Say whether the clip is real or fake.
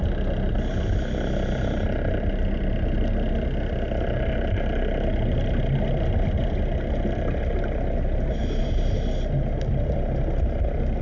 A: real